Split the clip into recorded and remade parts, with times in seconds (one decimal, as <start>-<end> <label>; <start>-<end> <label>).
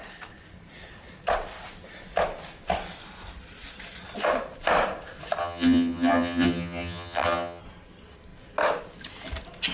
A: 0.0-5.4 recorded; 5.4-7.6 remade; 7.6-9.7 recorded